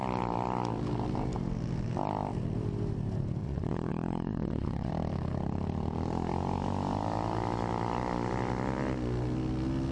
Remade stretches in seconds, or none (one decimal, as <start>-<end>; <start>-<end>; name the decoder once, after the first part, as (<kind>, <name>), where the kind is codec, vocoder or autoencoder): 3.4-4.9 (vocoder, Vocos)